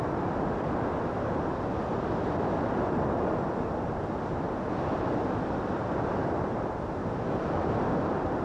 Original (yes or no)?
yes